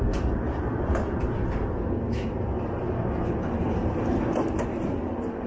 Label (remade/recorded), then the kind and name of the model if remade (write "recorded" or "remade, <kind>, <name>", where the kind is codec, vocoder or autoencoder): recorded